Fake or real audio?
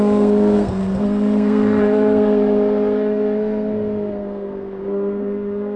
fake